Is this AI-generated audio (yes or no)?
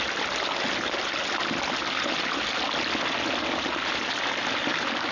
no